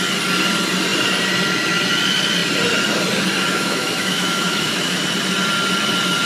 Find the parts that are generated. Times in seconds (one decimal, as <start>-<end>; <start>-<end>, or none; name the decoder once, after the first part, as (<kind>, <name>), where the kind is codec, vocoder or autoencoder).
3.5-5.0 (autoencoder, DAC-VAE)